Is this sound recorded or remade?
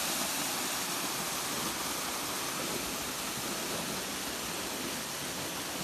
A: recorded